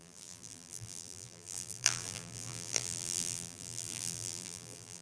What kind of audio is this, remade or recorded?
remade